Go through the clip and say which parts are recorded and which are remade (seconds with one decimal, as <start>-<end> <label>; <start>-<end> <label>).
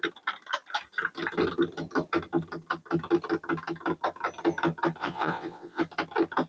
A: 0.0-5.0 recorded; 5.0-5.8 remade; 5.8-6.5 recorded